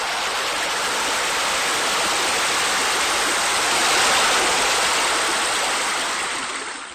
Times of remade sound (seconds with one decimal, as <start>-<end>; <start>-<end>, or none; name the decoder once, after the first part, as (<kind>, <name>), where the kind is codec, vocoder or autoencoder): none